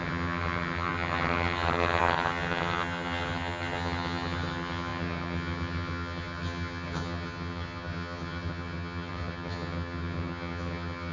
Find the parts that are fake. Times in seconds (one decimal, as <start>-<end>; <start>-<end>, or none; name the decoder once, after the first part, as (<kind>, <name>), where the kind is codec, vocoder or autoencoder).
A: 0.0-11.1 (vocoder, HiFi-GAN)